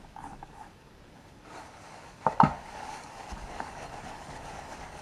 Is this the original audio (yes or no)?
no